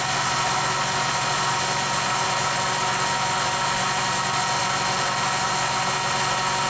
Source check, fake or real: real